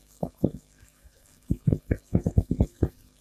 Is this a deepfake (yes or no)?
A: yes